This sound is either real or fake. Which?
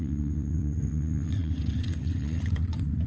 fake